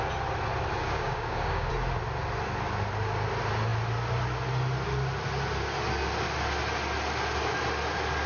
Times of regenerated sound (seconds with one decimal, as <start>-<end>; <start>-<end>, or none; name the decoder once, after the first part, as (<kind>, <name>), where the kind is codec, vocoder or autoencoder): 0.8-1.7 (codec, DAC)